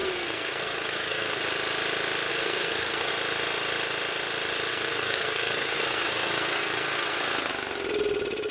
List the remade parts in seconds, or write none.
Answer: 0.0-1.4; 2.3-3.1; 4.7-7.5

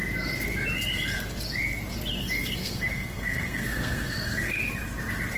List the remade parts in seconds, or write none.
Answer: 2.2-4.6

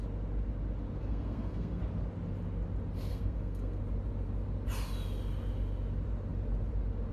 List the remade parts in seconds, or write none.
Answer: 1.0-1.8; 3.1-3.8

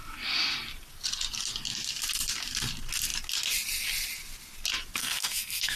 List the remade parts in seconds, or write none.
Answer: 5.0-5.8